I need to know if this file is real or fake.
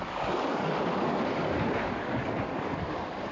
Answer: fake